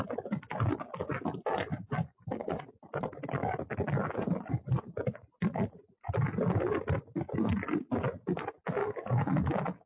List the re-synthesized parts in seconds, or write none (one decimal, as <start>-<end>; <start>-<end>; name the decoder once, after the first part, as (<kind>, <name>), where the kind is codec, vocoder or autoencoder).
1.7-2.7 (codec, DAC); 8.8-9.5